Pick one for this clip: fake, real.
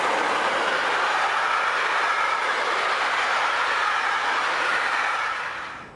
real